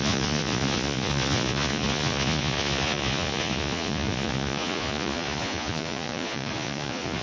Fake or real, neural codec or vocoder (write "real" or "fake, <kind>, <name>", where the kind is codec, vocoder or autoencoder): fake, vocoder, Vocos